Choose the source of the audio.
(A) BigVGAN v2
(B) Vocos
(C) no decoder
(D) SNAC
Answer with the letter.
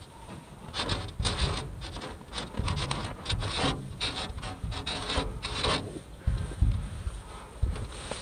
C